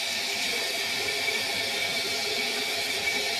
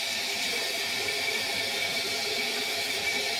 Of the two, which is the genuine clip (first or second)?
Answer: first